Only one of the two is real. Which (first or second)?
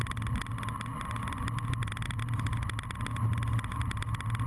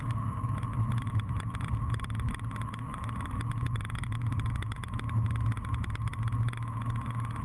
first